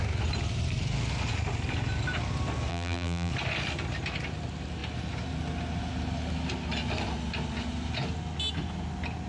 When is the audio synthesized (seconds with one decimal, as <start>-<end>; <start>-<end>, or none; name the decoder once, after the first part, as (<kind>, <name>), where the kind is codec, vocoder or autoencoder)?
2.7-3.3 (vocoder, BigVGAN v2)